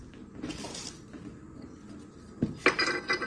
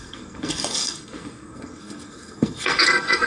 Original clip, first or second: first